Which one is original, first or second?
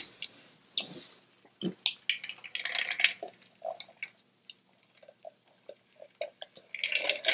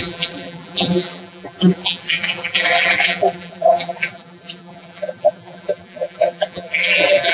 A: first